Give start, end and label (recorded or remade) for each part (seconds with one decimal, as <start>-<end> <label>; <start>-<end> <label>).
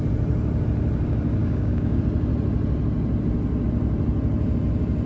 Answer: 0.0-1.4 recorded; 1.4-2.0 remade; 2.0-5.1 recorded